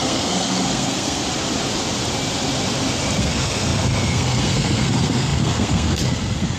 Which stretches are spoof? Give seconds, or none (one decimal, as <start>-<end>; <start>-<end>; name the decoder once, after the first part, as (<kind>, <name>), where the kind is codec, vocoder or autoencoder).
0.0-1.2 (codec, SNAC); 3.2-6.6